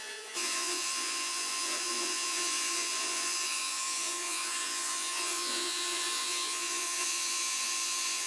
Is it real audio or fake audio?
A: fake